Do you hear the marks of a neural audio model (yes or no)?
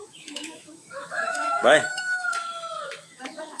yes